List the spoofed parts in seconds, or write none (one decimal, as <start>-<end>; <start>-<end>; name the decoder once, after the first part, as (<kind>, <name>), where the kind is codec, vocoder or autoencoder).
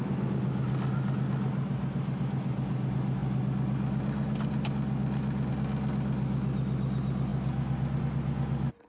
none